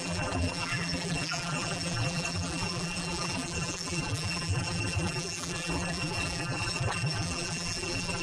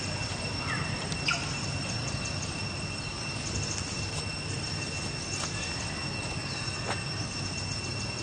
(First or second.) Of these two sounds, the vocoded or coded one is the first